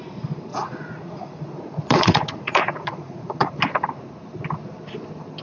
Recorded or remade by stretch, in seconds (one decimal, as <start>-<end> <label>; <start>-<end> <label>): 0.0-0.5 recorded; 0.5-3.5 remade; 3.5-5.4 recorded